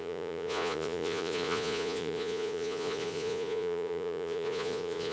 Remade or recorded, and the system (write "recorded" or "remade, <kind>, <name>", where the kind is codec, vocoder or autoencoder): remade, vocoder, Vocos